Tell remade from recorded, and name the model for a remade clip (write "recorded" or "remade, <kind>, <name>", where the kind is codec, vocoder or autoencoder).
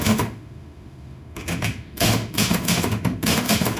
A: remade, autoencoder, DAC-VAE